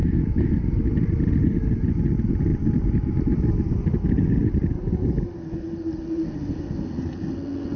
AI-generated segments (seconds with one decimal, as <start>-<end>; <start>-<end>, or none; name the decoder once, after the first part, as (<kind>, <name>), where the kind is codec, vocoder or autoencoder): 0.0-0.5 (autoencoder, DAC-VAE)